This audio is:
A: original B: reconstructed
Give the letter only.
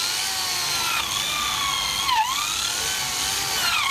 A